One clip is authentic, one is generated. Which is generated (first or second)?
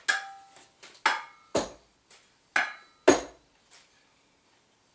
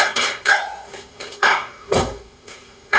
second